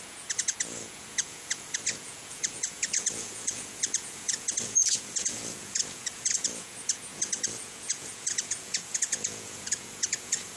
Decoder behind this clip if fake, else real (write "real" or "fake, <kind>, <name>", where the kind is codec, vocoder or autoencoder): fake, vocoder, Vocos